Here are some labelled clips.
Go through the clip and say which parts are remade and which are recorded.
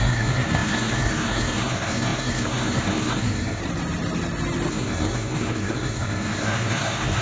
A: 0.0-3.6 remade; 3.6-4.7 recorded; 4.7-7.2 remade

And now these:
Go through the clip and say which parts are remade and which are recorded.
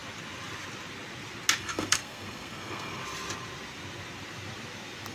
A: 0.0-1.6 recorded; 1.6-3.0 remade; 3.0-5.1 recorded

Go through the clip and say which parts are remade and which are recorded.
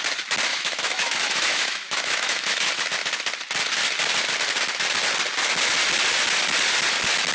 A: 0.0-0.5 recorded; 0.5-2.7 remade; 2.7-7.3 recorded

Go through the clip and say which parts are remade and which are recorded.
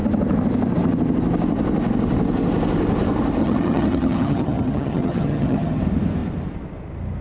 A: 0.0-3.4 recorded; 3.4-5.8 remade; 5.8-7.2 recorded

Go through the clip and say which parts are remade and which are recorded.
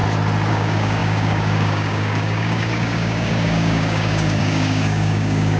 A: 0.0-0.5 recorded; 0.5-5.6 remade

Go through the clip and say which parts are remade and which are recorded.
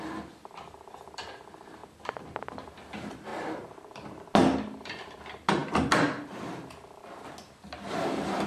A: 0.0-3.3 recorded; 3.3-4.2 remade; 4.2-8.5 recorded